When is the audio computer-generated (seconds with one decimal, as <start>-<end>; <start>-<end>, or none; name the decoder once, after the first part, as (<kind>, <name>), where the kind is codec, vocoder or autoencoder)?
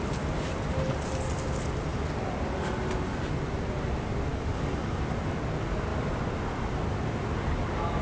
4.3-5.0 (codec, DAC)